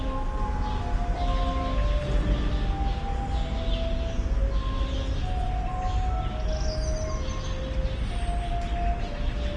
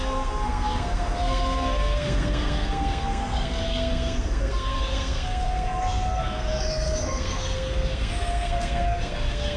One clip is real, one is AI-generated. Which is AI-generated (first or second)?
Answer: second